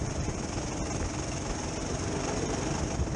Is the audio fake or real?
real